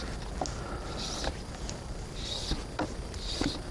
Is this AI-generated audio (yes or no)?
no